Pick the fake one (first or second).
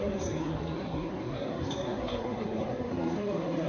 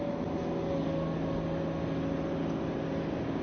first